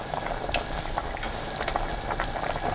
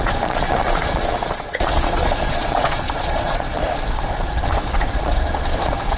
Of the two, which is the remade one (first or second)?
second